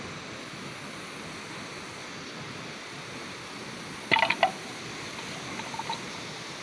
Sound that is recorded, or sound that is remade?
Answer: recorded